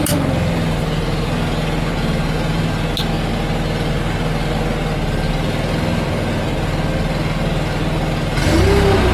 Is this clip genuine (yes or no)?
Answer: yes